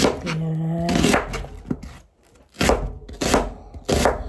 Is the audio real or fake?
real